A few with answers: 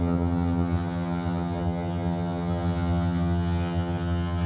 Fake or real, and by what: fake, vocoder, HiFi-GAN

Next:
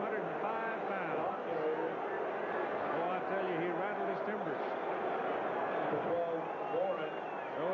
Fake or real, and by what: real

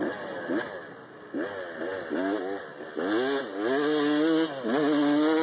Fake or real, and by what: real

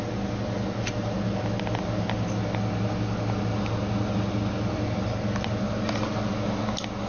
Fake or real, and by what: real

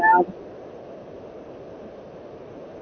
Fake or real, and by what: real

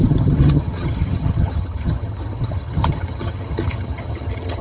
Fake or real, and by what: fake, vocoder, HiFi-GAN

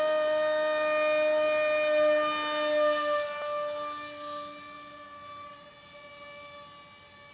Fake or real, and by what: real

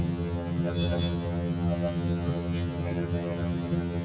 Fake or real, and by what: fake, vocoder, HiFi-GAN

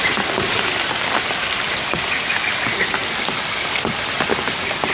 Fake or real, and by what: real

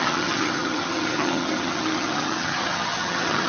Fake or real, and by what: fake, vocoder, HiFi-GAN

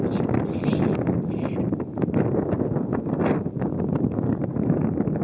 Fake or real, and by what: real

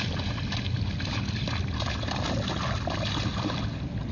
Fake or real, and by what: real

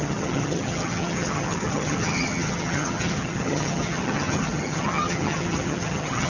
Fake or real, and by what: fake, vocoder, HiFi-GAN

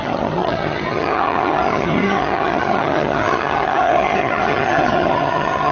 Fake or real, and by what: fake, vocoder, HiFi-GAN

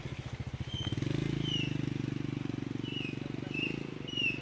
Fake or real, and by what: real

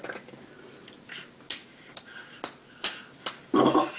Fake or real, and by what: real